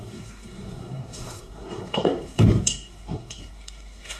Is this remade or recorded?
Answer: remade